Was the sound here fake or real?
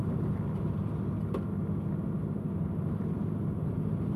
real